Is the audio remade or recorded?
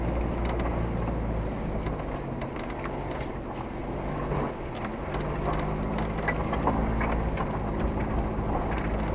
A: recorded